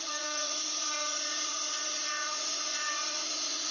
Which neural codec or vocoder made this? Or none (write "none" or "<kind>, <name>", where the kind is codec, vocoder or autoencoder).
vocoder, Vocos